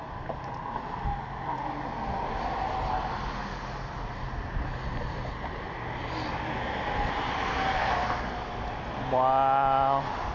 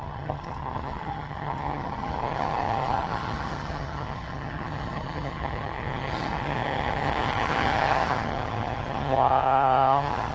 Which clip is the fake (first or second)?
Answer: second